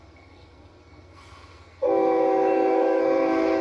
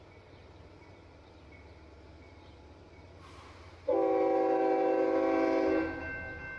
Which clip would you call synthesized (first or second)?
first